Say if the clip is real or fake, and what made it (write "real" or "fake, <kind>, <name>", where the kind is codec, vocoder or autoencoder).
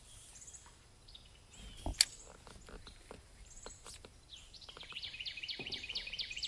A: real